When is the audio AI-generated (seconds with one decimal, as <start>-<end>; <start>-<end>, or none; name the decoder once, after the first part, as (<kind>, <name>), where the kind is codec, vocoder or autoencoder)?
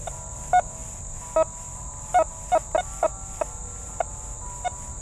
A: none